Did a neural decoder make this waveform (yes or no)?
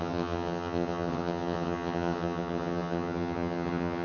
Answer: yes